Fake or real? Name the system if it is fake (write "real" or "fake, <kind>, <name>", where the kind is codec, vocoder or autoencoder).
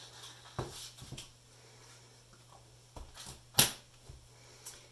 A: real